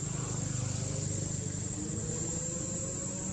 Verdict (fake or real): real